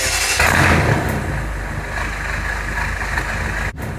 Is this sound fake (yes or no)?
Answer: no